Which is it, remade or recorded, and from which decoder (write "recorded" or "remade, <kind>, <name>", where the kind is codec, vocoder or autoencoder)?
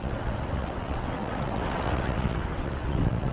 remade, vocoder, WaveNeXt